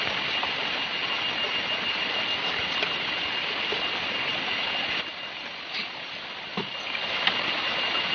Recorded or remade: recorded